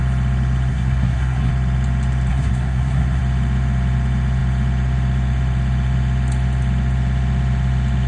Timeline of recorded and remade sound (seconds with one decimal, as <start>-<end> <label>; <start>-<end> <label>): 0.0-0.7 recorded; 0.7-1.5 remade; 1.5-2.3 recorded; 2.3-3.2 remade; 3.2-8.1 recorded